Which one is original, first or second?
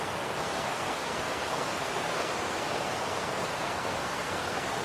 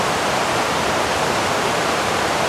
second